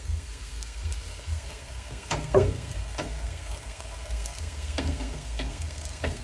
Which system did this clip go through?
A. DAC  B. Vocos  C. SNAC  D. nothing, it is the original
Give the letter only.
C